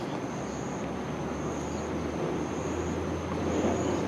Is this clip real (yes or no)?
yes